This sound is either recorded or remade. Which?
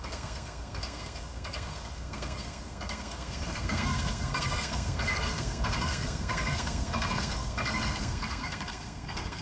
remade